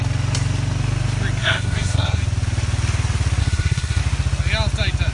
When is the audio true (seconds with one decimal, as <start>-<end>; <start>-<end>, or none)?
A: 0.0-1.4; 2.2-3.4; 4.0-5.1